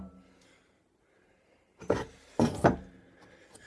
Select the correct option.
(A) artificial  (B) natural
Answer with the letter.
B